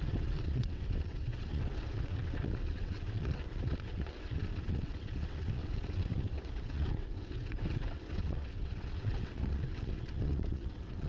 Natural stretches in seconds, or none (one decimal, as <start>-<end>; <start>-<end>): none

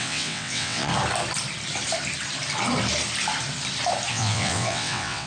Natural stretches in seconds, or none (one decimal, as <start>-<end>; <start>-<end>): 0.9-4.1